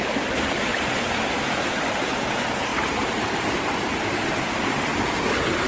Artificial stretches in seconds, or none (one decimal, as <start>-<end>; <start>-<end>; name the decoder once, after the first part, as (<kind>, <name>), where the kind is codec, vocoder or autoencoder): 0.7-1.4 (vocoder, BigVGAN v2)